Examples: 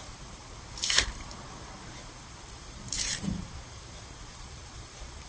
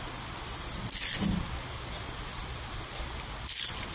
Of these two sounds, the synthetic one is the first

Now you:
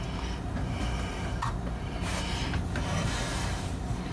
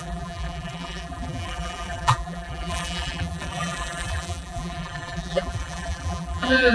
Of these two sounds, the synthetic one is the second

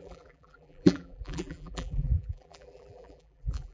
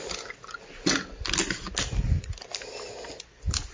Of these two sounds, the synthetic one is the first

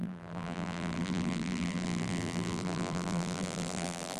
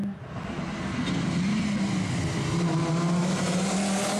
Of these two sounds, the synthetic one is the first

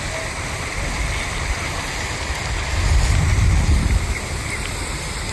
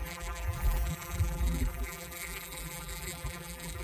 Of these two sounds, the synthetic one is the second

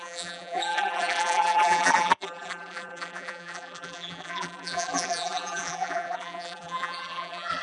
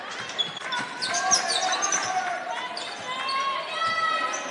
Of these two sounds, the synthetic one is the first